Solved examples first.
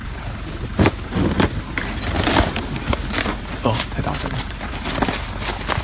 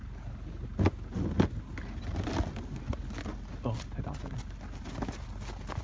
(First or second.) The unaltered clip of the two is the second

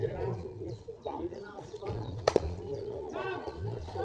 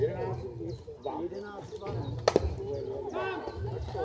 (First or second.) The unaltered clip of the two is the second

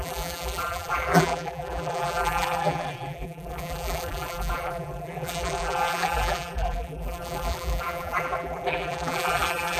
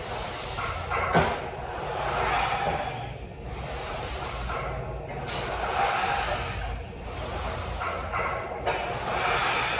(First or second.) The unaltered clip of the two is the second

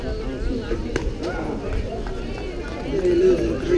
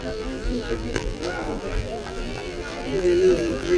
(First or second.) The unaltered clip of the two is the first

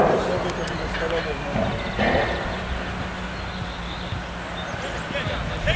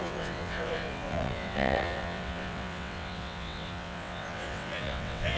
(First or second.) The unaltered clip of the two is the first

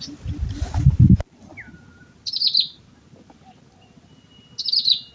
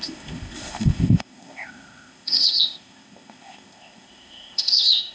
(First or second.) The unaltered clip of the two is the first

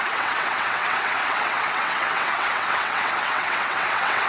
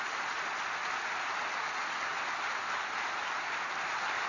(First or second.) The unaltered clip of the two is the second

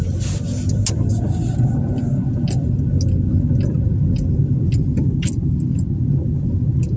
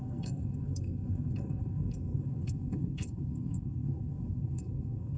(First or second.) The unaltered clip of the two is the first